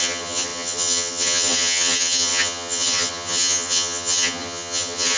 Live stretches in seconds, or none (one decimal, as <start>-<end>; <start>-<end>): none